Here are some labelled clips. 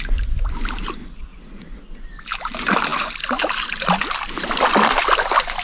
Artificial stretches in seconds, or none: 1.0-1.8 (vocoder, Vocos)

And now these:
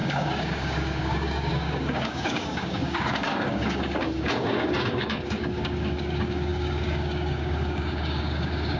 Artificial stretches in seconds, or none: 0.0-8.8 (codec, DAC)

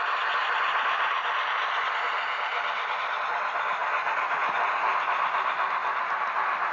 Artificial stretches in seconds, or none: none

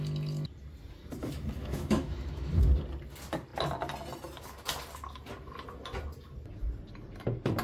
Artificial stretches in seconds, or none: 1.6-2.5 (autoencoder, DAC-VAE)

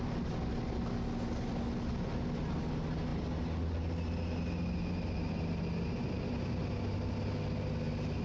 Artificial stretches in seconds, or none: none

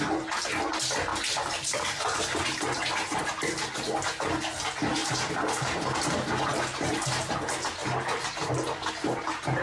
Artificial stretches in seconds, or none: 1.1-3.2 (vocoder, BigVGAN v2); 5.0-6.0; 6.7-7.3